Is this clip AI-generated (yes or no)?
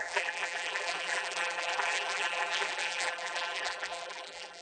yes